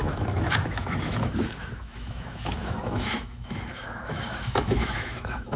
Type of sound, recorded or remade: remade